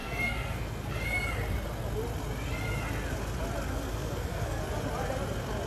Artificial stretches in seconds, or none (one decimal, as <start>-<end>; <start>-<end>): 0.0-0.9; 3.7-4.6